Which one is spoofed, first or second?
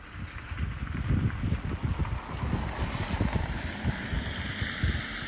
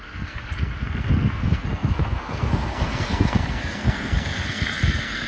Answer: second